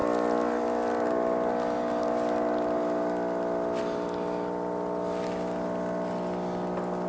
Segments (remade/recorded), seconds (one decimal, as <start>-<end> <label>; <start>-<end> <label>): 0.0-7.1 recorded